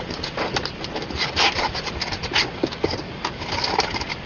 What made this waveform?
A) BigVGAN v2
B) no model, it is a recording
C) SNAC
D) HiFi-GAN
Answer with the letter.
B